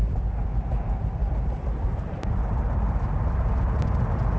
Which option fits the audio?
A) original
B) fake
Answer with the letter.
A